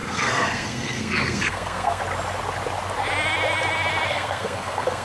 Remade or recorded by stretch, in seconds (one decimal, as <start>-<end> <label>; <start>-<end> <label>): 0.0-2.0 remade; 2.0-4.1 recorded; 4.1-5.0 remade